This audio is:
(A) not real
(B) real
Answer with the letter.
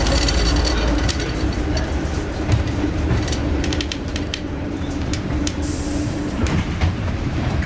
A